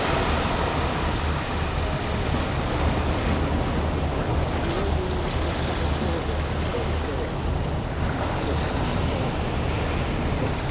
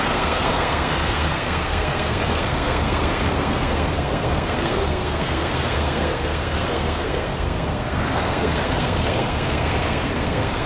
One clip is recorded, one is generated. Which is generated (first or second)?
second